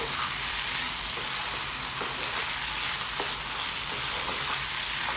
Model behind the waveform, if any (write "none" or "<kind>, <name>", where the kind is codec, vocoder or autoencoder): none